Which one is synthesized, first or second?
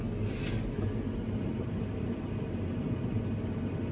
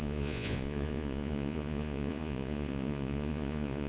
second